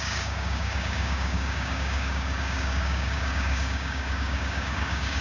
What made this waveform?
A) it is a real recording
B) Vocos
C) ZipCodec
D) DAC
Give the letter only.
D